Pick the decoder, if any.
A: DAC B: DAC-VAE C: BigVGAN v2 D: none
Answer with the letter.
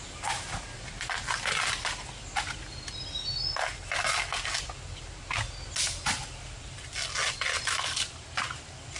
D